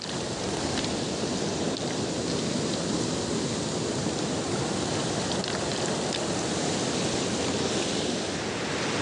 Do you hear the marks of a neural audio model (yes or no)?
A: no